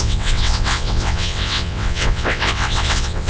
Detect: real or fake fake